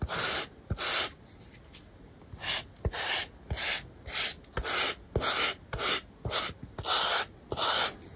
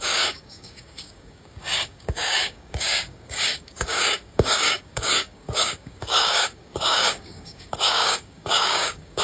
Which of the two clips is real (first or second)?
first